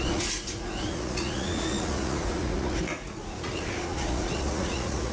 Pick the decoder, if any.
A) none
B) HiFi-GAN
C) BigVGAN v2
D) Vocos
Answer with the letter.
D